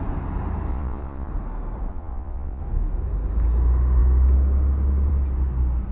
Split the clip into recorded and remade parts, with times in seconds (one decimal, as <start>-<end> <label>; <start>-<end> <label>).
0.0-0.7 recorded; 0.7-1.3 remade; 1.3-1.9 recorded; 1.9-2.6 remade; 2.6-5.9 recorded